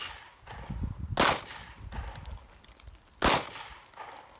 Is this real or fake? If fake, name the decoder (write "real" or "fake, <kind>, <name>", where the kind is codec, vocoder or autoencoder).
real